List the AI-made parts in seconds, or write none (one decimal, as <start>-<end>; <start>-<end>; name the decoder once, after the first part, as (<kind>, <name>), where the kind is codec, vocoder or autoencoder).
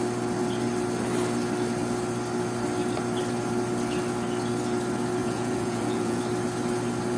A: 5.2-6.2 (vocoder, Vocos)